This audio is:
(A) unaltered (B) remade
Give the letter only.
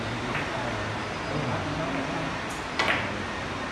A